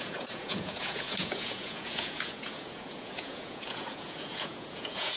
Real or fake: fake